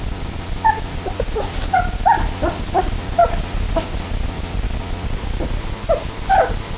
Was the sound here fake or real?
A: real